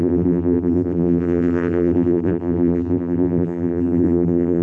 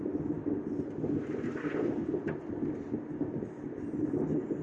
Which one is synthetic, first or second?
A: first